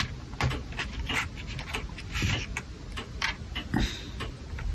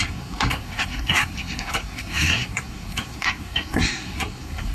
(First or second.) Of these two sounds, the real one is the first